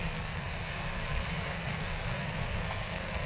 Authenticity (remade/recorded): remade